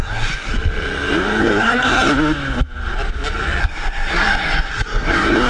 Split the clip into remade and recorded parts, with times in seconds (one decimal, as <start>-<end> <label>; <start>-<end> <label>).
0.0-0.5 remade; 0.5-1.4 recorded; 1.4-2.1 remade; 2.1-3.6 recorded; 3.6-5.5 remade